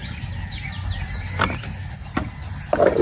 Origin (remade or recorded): recorded